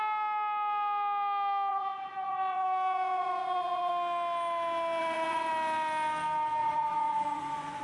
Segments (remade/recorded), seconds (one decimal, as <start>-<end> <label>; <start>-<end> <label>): 0.0-1.7 recorded; 1.7-3.9 remade; 3.9-5.0 recorded; 5.0-5.5 remade; 5.5-6.6 recorded; 6.6-7.8 remade